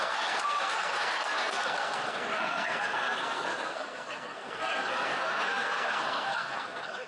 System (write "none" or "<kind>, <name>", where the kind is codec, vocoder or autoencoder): codec, SNAC